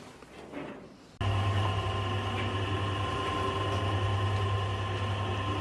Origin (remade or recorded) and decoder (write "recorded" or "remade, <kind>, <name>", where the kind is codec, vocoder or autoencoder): recorded